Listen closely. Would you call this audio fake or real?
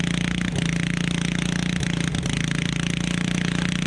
real